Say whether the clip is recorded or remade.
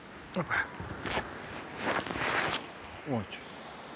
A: recorded